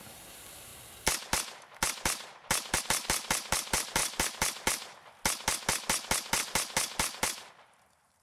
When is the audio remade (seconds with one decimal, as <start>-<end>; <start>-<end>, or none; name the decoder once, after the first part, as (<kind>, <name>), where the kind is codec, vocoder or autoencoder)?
0.0-0.7 (vocoder, BigVGAN v2); 2.8-4.0; 7.5-8.2